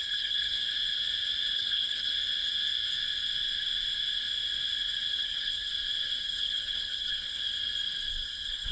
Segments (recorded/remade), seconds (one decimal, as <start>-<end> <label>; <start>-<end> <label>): 0.0-0.7 remade; 0.7-1.5 recorded; 1.5-2.1 remade; 2.1-5.1 recorded; 5.1-5.7 remade; 5.7-6.2 recorded; 6.2-7.4 remade; 7.4-8.1 recorded; 8.1-8.7 remade